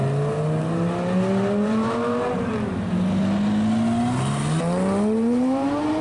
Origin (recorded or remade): recorded